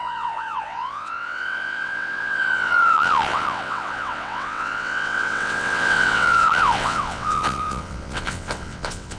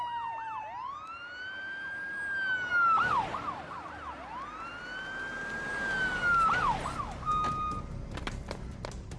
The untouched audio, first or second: second